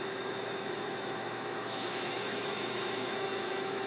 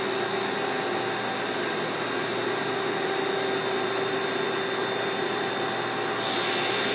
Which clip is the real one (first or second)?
second